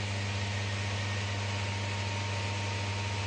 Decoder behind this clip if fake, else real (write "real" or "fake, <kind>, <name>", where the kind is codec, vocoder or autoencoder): real